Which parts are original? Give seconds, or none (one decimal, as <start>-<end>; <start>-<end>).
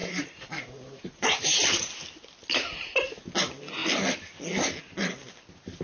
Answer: 1.4-5.8